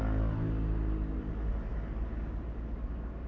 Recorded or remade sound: recorded